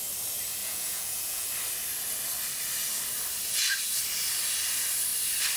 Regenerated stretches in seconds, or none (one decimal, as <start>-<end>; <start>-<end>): 0.6-1.5